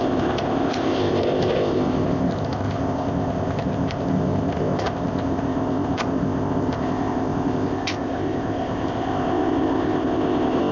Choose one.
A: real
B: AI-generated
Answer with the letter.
B